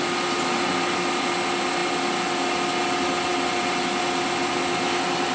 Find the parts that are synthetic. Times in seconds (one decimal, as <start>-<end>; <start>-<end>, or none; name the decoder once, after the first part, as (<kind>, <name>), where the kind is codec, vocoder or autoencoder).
none